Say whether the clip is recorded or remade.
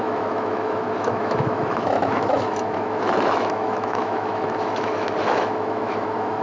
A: remade